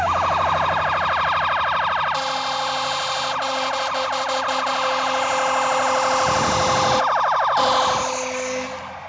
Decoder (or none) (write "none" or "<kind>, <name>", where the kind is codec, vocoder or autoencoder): none